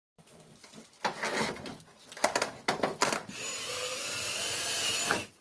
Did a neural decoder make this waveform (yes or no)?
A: no